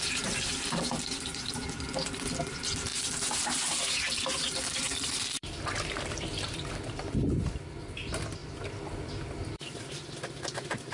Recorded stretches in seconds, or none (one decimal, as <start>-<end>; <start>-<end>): 2.9-4.8; 8.4-9.5